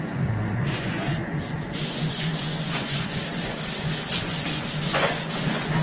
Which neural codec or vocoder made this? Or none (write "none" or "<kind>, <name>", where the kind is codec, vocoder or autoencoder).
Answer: vocoder, Vocos